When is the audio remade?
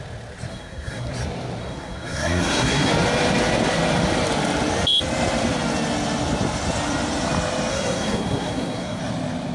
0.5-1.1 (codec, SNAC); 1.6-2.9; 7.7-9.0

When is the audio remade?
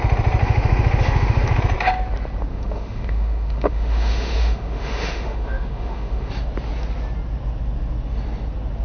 0.4-1.6 (autoencoder, DAC-VAE); 2.5-6.3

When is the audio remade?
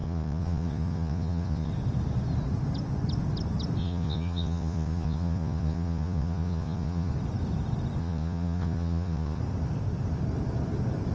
0.0-1.7 (vocoder, Vocos); 3.8-7.1; 8.0-9.4